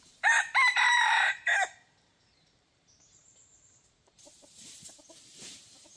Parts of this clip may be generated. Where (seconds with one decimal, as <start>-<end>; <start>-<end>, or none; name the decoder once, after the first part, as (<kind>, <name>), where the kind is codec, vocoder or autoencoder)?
0.0-1.5 (vocoder, BigVGAN v2); 2.1-6.0